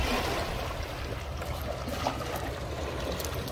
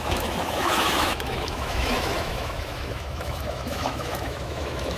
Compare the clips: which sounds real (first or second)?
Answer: first